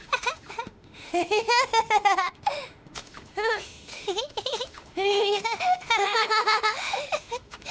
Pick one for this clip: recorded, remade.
remade